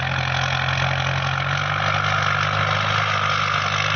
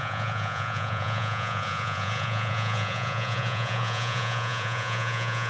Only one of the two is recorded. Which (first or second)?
first